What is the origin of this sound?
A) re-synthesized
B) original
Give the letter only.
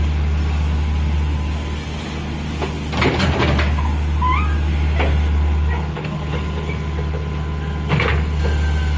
B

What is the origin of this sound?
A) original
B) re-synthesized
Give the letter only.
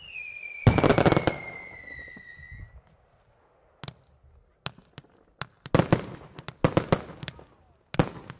A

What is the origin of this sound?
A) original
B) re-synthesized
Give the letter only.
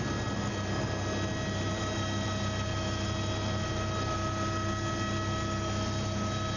A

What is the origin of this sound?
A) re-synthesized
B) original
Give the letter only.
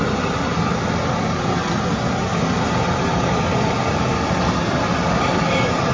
B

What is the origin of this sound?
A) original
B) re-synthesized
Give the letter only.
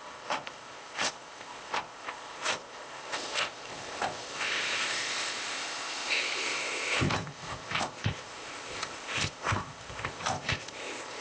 B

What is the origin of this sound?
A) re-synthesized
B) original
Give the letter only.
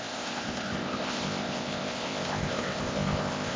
A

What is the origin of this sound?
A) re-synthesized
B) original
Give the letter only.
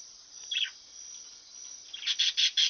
B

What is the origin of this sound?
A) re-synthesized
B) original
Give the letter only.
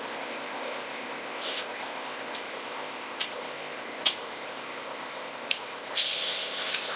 A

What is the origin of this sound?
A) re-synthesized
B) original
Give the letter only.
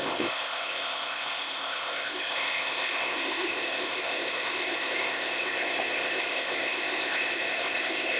A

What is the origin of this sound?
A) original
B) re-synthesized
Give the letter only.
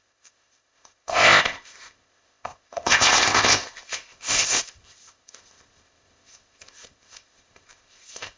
B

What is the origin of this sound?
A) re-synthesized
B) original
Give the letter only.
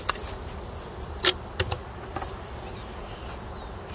B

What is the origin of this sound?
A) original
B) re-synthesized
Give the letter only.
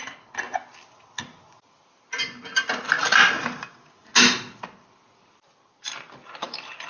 A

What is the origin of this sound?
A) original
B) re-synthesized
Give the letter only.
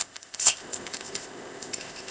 B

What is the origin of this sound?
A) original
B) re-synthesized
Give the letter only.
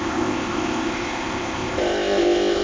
B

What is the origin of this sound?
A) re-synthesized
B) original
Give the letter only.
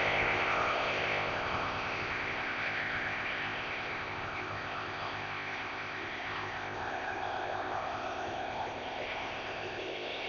A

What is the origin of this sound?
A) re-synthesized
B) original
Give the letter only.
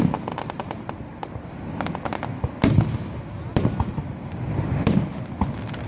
B